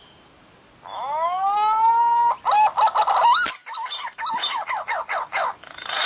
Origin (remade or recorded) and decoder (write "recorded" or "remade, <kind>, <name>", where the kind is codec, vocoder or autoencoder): recorded